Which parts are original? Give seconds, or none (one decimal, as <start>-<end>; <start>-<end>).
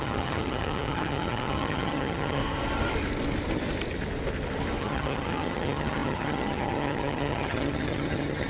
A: 2.4-4.8